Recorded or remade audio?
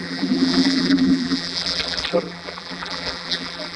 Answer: remade